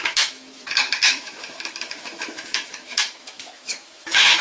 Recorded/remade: remade